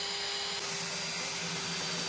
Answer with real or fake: real